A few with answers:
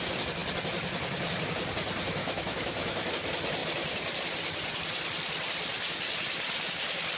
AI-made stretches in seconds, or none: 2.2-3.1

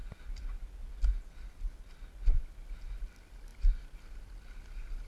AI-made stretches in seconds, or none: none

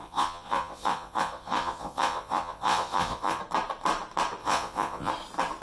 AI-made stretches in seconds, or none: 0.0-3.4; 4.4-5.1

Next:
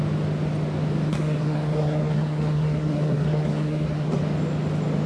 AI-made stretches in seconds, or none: 1.1-4.2

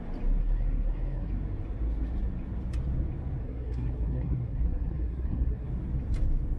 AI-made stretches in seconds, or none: 0.4-1.3; 3.4-5.7